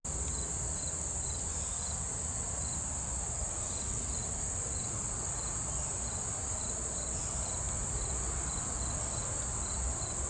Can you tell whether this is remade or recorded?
recorded